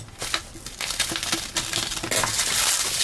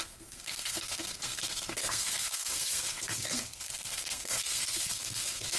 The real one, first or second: first